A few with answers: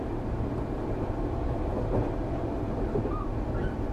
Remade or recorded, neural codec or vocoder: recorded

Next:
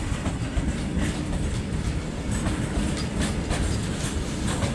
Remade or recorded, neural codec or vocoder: recorded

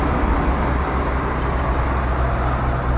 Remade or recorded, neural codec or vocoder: recorded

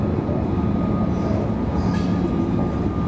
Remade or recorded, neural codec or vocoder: recorded